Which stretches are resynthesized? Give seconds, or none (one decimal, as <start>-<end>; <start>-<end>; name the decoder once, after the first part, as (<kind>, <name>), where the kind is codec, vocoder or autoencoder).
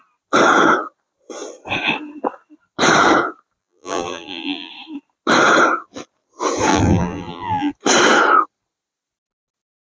3.6-4.7 (vocoder, BigVGAN v2); 6.7-7.7